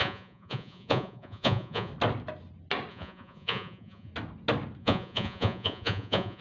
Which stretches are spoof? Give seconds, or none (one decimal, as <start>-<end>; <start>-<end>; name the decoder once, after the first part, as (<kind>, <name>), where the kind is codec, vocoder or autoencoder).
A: 0.0-1.9 (vocoder, Vocos); 2.9-4.1; 4.8-6.4